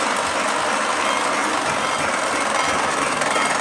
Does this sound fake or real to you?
real